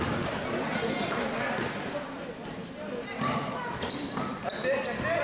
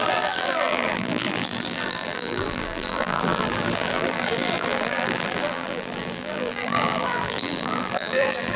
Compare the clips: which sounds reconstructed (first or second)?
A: second